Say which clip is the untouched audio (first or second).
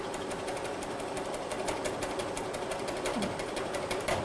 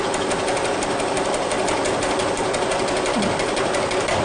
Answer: second